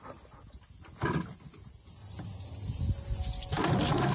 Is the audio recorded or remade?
recorded